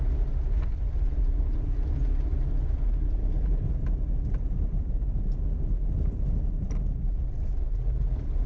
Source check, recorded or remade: recorded